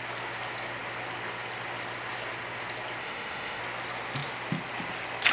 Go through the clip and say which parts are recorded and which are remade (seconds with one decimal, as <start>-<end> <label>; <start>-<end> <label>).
0.0-3.0 recorded; 3.0-3.6 remade; 3.6-5.3 recorded